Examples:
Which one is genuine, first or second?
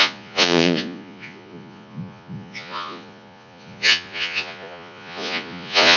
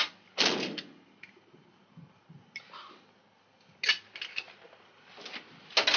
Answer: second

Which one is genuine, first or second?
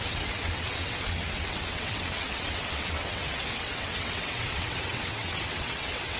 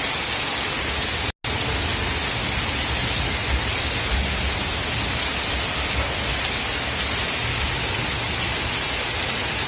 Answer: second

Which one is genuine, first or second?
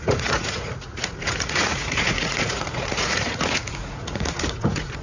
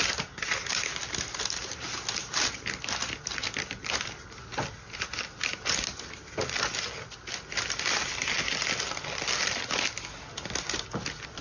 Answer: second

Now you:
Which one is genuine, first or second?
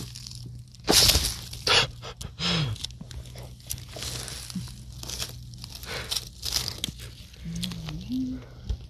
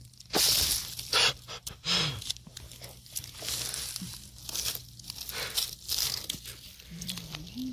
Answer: first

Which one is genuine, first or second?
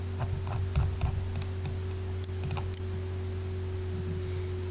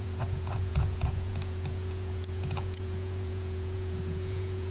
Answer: first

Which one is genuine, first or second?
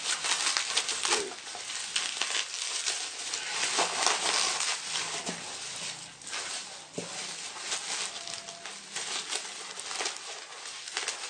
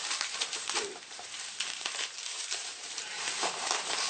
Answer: first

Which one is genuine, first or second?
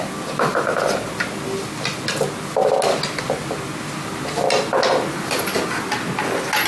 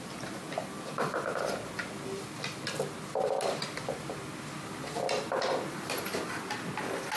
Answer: first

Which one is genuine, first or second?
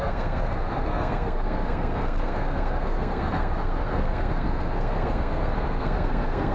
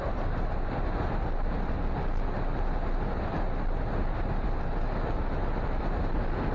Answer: second